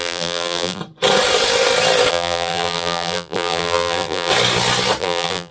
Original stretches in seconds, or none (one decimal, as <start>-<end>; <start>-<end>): 0.8-2.1; 4.3-5.0